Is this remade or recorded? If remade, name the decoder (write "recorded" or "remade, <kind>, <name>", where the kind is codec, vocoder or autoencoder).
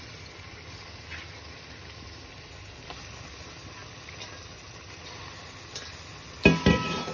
recorded